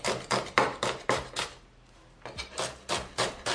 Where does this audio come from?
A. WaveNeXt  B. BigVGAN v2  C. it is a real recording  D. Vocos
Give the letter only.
C